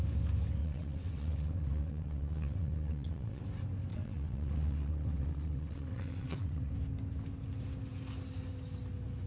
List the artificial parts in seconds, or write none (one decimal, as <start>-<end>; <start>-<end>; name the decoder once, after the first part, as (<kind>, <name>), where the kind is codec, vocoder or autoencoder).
0.6-3.4 (vocoder, WaveNeXt); 3.9-6.7